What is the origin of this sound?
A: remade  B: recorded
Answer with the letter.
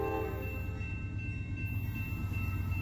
B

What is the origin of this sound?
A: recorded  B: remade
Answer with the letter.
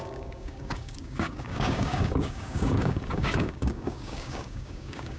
B